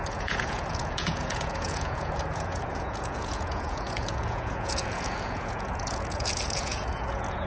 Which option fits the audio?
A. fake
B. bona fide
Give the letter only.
A